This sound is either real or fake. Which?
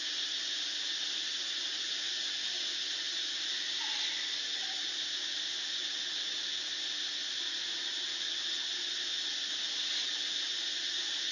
real